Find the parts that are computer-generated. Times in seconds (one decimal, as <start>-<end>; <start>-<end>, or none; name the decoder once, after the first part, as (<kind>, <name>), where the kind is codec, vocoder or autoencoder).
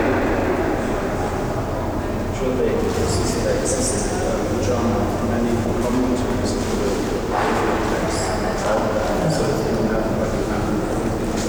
10.2-10.7 (autoencoder, DAC-VAE)